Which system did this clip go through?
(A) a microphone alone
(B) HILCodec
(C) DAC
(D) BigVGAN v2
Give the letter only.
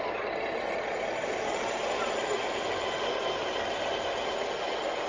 A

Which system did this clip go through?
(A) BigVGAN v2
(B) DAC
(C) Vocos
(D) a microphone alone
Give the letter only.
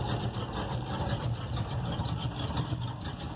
D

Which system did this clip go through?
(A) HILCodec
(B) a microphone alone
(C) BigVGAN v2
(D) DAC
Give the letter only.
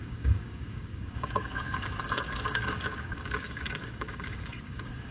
D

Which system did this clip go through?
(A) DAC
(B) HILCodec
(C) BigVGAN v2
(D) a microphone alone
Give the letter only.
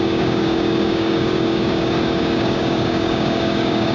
A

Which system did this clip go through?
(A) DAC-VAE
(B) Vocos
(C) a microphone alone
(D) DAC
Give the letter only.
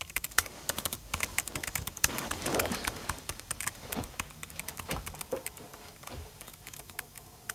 D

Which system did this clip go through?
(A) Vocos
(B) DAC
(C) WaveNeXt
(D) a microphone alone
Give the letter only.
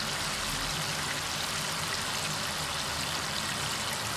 D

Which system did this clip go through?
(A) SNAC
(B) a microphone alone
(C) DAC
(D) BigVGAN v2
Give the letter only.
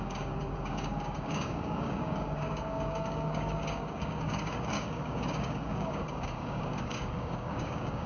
C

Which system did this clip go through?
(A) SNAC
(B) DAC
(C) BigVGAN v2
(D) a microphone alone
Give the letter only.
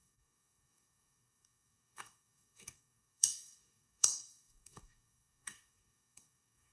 B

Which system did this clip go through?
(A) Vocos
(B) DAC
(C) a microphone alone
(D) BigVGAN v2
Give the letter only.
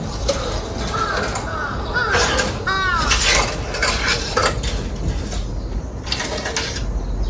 C